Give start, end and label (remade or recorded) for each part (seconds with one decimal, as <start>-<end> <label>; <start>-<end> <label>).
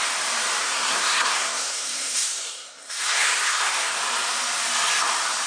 0.0-0.6 recorded; 0.6-3.9 remade; 3.9-5.5 recorded